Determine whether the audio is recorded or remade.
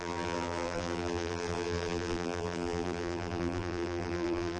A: remade